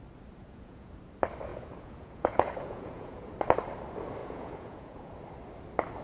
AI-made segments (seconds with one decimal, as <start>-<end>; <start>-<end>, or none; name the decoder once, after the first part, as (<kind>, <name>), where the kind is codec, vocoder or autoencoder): 0.4-0.9 (vocoder, Vocos); 1.5-3.3; 4.2-5.1